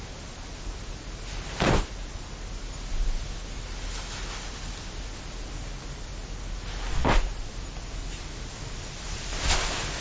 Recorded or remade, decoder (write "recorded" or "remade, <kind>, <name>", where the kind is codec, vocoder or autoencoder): recorded